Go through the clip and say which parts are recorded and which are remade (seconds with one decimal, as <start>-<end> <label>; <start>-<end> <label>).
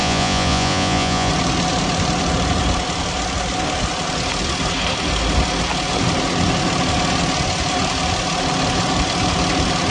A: 0.0-1.3 remade; 1.3-9.9 recorded